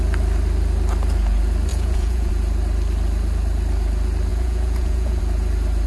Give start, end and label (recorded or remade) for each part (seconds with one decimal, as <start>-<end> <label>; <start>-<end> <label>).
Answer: 0.0-1.7 recorded; 1.7-2.3 remade; 2.3-4.3 recorded; 4.3-5.2 remade; 5.2-5.9 recorded

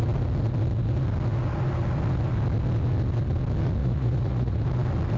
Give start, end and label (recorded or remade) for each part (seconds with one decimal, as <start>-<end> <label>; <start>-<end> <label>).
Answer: 0.0-3.8 recorded; 3.8-4.6 remade; 4.6-5.2 recorded

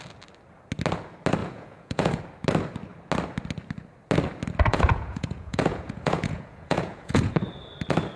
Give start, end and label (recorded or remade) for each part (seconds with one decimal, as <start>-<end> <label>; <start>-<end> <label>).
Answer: 0.0-1.4 recorded; 1.4-2.2 remade; 2.2-4.7 recorded; 4.7-7.3 remade; 7.3-8.2 recorded

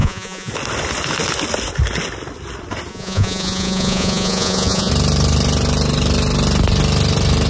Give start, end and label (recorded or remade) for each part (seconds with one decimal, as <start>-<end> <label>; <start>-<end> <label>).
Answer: 0.0-0.5 remade; 0.5-2.9 recorded; 2.9-4.9 remade; 4.9-7.5 recorded

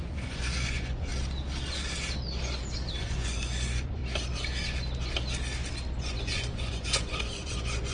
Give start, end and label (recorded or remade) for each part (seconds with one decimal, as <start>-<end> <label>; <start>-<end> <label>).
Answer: 0.0-1.1 remade; 1.1-3.0 recorded; 3.0-4.0 remade; 4.0-6.1 recorded; 6.1-7.9 remade

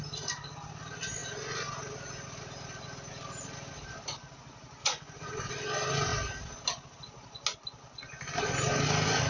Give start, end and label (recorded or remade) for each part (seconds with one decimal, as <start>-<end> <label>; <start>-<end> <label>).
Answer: 0.0-4.8 recorded; 4.8-5.5 remade; 5.5-9.3 recorded

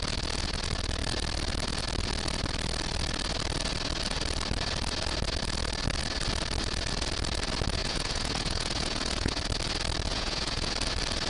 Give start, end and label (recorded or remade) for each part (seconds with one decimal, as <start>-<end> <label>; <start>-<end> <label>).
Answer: 0.0-7.8 recorded; 7.8-9.4 remade; 9.4-10.1 recorded; 10.1-10.7 remade; 10.7-11.3 recorded

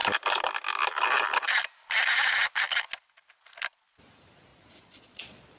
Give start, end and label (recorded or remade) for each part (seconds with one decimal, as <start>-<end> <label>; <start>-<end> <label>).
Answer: 0.0-4.5 recorded; 4.5-5.6 remade